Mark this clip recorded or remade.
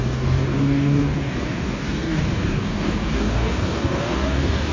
remade